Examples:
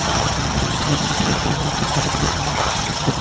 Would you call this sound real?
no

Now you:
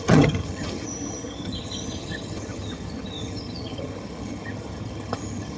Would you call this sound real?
no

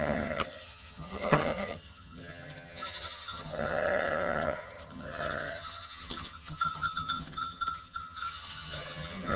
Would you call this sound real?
no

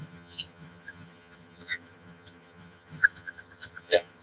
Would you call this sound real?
no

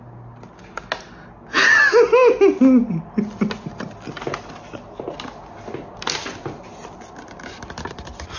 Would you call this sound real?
yes